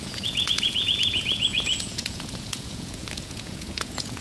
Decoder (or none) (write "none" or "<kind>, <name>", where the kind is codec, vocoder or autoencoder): vocoder, Vocos